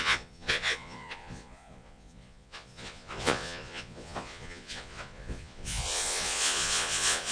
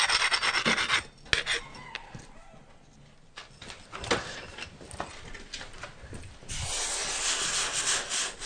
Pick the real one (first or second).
second